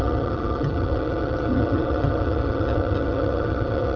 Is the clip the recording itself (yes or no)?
no